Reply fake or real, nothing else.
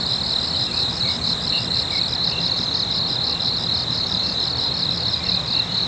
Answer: real